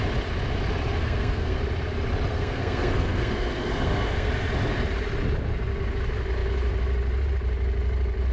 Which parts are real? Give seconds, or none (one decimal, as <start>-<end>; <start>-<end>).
0.0-0.9; 1.6-2.3; 4.3-8.3